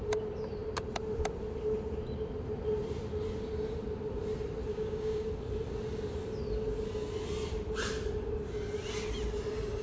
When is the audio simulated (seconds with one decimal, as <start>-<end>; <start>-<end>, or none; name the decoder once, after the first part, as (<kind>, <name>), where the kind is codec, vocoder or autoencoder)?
4.7-5.3 (codec, DAC)